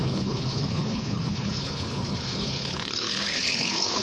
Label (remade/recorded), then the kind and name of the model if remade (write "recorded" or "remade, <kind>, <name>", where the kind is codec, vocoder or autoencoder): remade, codec, HILCodec